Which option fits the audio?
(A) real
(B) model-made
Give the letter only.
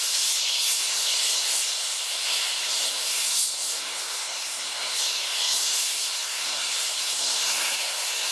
B